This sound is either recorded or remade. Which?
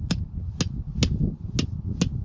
recorded